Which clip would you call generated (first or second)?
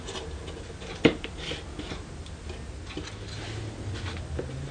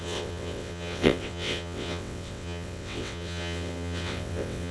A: second